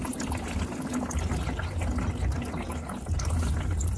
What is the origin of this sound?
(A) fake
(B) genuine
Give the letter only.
B